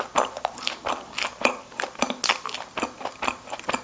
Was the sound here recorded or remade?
recorded